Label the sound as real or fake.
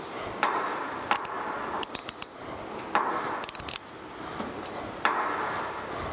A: real